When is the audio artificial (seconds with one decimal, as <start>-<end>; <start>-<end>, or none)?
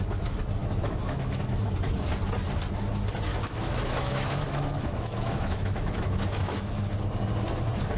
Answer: 0.6-1.7; 3.3-6.8